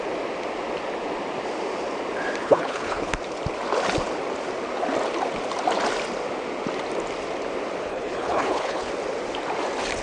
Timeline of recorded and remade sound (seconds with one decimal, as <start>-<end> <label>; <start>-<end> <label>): 0.0-2.4 recorded; 2.4-3.2 remade; 3.2-7.9 recorded; 7.9-8.9 remade; 8.9-10.0 recorded